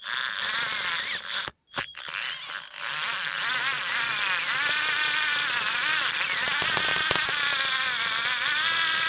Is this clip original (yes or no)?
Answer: yes